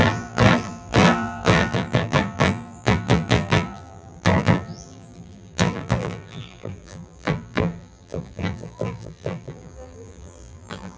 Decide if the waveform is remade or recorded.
remade